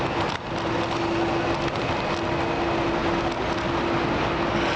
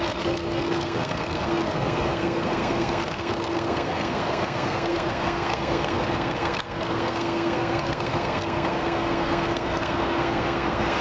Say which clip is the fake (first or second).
second